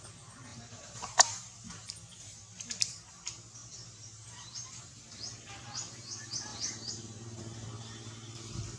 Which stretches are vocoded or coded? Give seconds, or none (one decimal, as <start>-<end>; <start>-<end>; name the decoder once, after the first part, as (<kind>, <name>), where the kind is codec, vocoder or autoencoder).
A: 0.5-1.9 (vocoder, BigVGAN v2); 3.6-5.0; 6.5-7.4